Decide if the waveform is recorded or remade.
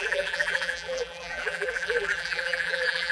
remade